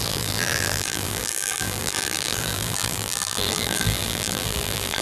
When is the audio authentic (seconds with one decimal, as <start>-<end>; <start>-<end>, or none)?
none